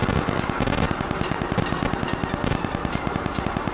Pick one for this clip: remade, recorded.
recorded